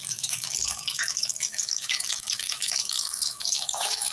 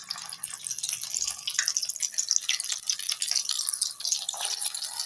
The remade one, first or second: first